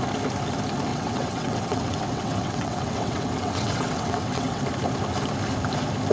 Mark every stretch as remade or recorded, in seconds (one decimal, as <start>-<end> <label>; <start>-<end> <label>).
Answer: 0.0-0.9 recorded; 0.9-4.6 remade; 4.6-6.1 recorded